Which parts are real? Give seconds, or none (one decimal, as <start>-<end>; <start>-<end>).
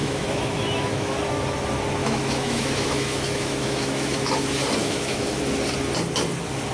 1.2-2.0; 4.3-4.8; 5.4-6.7